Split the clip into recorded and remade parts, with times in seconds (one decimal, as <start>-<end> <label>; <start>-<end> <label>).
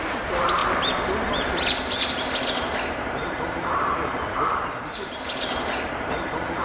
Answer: 0.0-0.6 remade; 0.6-1.9 recorded; 1.9-6.6 remade